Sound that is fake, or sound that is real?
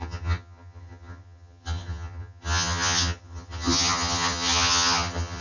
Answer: fake